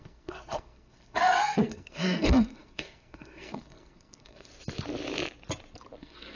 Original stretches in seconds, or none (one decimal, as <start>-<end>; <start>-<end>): 4.5-6.0